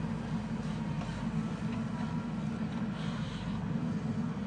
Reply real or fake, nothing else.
real